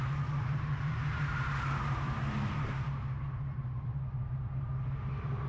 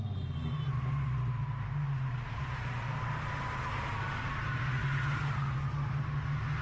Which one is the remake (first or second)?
first